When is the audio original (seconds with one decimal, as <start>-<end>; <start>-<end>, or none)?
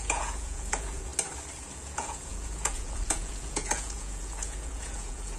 1.1-1.6